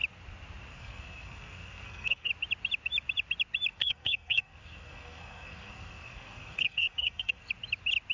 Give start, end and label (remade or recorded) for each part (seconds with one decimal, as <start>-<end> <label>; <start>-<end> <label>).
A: 0.0-0.7 recorded; 0.7-2.3 remade; 2.3-3.7 recorded; 3.7-7.5 remade; 7.5-8.1 recorded